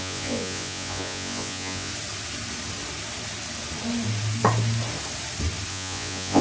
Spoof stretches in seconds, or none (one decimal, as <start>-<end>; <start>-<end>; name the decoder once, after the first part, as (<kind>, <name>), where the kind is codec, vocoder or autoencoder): 0.0-1.9 (vocoder, Vocos); 5.7-6.4